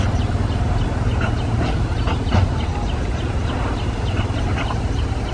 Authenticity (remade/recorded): recorded